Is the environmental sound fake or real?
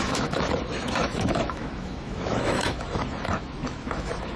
fake